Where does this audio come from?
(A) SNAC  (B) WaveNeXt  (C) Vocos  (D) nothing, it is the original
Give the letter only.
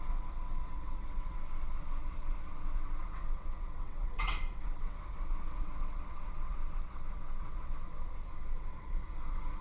B